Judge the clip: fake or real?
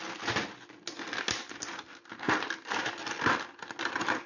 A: real